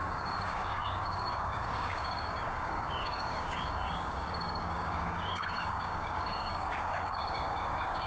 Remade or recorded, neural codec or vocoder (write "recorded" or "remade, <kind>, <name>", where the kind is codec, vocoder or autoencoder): remade, codec, DAC